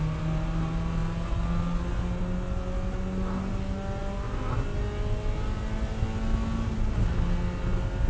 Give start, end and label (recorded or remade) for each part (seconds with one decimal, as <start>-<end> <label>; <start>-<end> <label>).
0.0-8.1 recorded